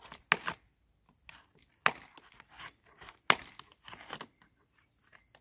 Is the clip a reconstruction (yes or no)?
no